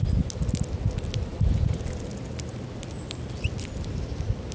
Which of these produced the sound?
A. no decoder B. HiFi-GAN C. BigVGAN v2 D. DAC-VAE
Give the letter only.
A